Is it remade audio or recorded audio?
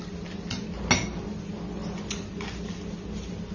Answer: recorded